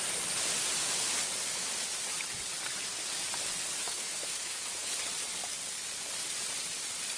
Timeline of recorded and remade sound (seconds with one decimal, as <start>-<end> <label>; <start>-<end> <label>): 0.0-3.8 recorded; 3.8-4.9 remade; 4.9-7.2 recorded